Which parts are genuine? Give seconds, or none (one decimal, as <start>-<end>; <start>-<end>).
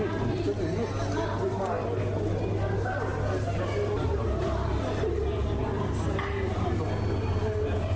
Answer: 0.0-8.0